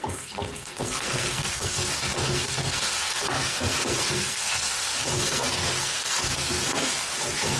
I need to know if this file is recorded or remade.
remade